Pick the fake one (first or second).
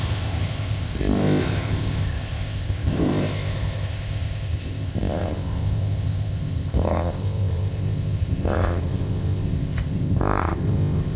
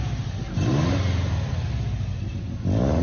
first